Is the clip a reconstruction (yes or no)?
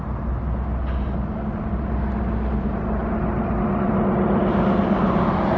no